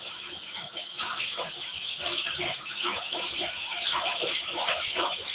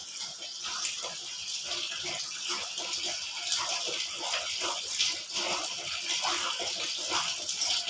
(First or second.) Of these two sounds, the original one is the second